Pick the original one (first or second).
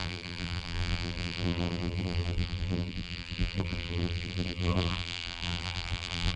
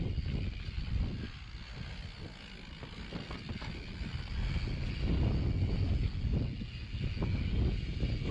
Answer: second